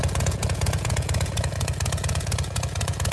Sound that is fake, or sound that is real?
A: fake